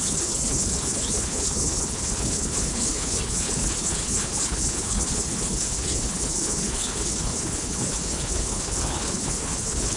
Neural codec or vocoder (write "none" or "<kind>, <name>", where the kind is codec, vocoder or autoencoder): codec, HILCodec